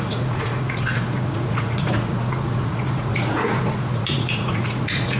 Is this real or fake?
fake